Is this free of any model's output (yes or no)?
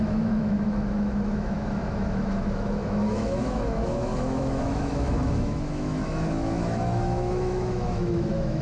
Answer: no